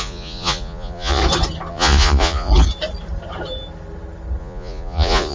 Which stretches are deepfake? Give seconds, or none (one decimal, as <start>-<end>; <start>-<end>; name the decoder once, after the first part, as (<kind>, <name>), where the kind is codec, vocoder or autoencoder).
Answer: 0.0-1.2 (vocoder, Vocos); 1.7-2.5; 4.4-5.3